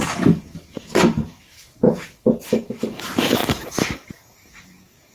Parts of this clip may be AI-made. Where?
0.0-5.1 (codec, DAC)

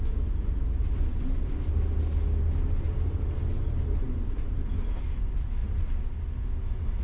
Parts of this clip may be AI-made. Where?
none